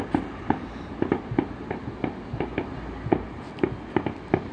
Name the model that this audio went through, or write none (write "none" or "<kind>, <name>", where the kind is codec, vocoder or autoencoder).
none